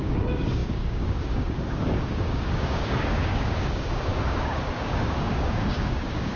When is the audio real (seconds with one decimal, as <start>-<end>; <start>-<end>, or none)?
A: none